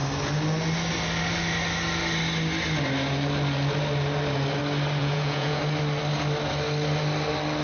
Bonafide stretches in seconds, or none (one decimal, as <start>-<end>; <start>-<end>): 0.0-5.0; 5.6-7.6